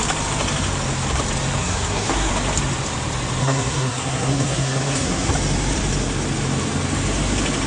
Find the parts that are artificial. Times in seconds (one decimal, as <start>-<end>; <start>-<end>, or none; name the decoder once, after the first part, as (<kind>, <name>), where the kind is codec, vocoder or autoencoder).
1.6-2.3 (codec, SNAC); 3.4-5.3